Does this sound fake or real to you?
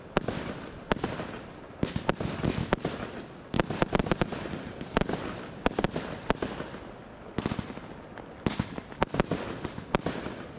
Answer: real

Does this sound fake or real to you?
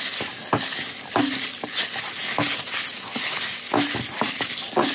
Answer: real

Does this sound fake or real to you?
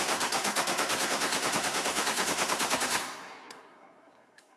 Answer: fake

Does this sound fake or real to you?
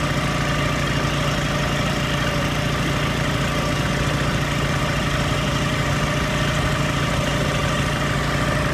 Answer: real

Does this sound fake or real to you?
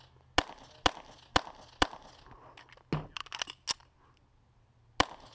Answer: real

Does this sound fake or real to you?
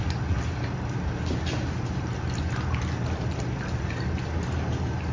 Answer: real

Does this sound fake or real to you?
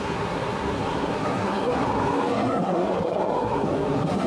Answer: fake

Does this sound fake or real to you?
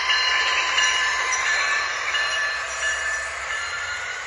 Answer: fake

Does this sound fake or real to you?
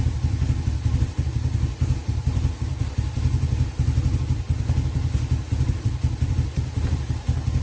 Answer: real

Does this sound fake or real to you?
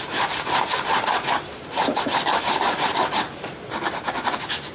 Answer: fake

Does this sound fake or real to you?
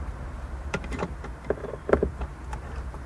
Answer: fake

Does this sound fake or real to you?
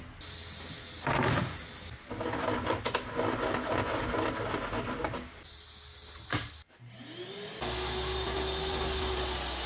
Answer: real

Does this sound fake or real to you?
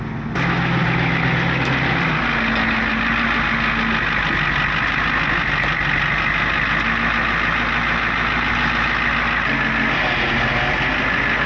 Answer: real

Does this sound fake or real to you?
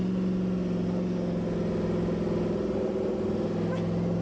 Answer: real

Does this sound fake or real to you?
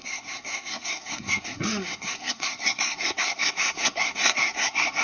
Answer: fake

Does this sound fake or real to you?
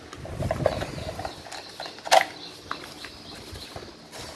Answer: real